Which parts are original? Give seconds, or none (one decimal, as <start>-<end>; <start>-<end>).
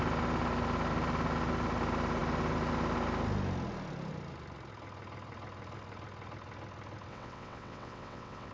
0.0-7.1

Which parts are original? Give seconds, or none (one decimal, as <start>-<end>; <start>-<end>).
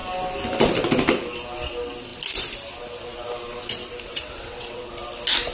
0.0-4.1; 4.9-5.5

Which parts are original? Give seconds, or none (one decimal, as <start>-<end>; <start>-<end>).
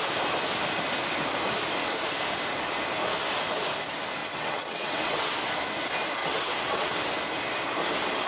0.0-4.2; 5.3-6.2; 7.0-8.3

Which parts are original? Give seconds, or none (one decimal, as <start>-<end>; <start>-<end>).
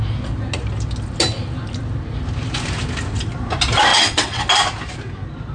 0.0-3.9; 4.4-5.5